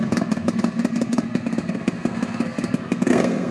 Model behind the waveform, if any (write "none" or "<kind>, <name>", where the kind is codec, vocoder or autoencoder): codec, SNAC